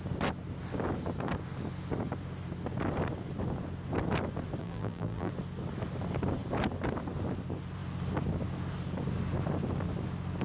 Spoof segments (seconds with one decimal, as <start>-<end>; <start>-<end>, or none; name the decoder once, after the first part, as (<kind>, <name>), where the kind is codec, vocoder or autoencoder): 4.6-5.3 (vocoder, BigVGAN v2)